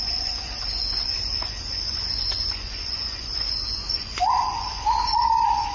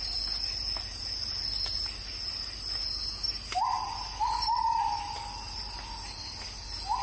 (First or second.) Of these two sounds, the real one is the second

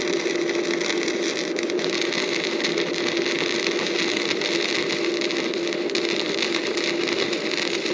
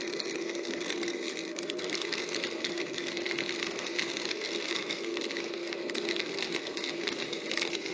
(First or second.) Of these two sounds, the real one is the first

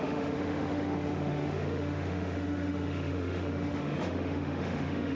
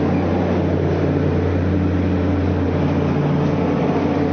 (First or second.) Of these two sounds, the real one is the second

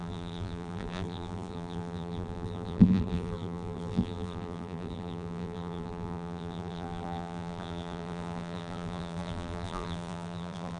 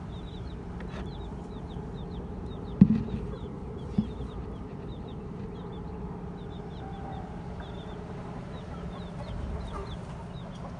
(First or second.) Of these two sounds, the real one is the second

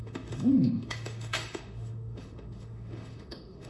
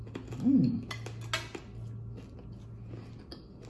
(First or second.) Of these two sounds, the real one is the second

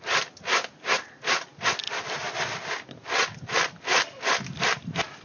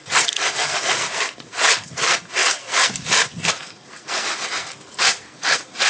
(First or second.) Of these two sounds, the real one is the first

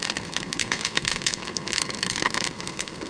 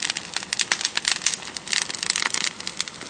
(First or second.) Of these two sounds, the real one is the second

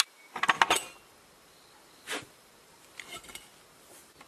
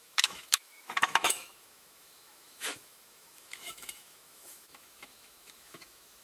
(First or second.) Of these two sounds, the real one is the first